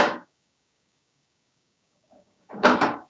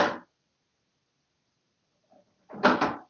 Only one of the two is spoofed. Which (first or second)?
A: first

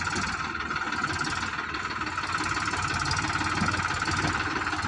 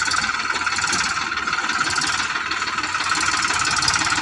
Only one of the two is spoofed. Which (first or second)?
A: second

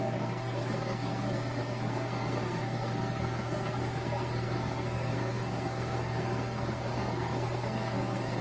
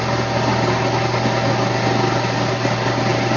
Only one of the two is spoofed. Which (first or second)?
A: first